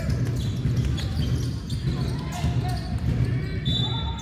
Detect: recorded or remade recorded